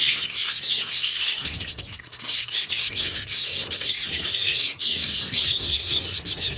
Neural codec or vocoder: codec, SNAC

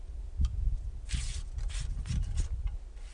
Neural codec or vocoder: none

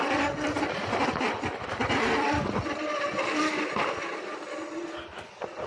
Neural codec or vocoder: none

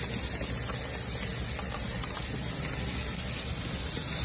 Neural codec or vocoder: none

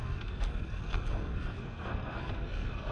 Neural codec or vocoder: codec, SNAC